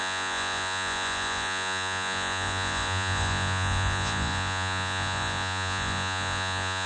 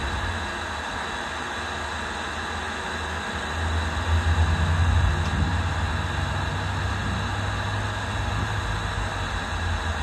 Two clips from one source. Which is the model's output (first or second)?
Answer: first